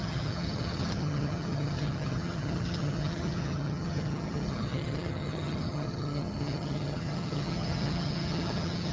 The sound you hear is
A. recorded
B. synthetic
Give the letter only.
B